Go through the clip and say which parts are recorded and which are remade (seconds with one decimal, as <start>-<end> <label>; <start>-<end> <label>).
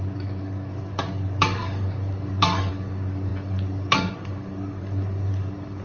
0.0-5.8 remade